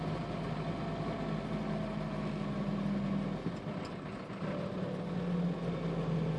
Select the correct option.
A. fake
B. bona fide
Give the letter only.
B